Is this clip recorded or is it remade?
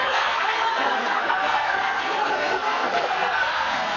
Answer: remade